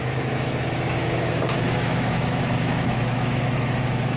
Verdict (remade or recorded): remade